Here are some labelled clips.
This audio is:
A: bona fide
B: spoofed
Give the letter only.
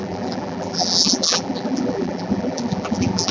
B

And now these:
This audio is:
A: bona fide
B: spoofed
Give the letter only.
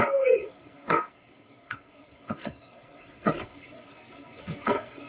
B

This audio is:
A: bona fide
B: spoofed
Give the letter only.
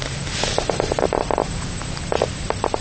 B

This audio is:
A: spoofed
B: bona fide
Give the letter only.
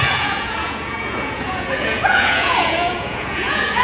A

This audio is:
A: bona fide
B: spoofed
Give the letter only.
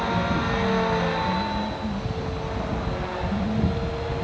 A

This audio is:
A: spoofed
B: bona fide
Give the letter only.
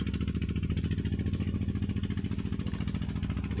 B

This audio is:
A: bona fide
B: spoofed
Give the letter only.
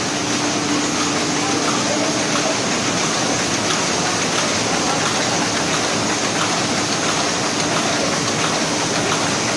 A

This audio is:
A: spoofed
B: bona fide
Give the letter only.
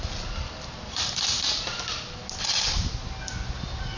B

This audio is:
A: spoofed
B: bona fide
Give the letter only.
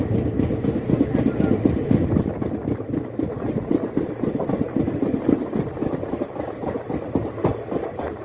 B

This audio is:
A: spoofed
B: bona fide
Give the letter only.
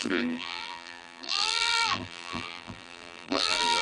A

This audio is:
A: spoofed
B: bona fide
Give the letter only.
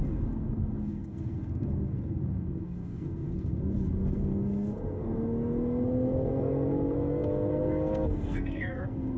A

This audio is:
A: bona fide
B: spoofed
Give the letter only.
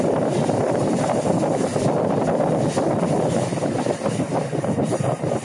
A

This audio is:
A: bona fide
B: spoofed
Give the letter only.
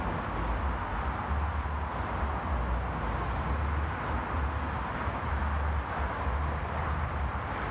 A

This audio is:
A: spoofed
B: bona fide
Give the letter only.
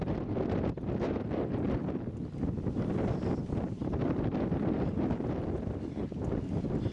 B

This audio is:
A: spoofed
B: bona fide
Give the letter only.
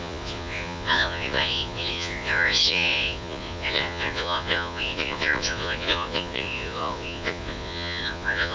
A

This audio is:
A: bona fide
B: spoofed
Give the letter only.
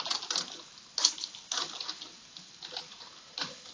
A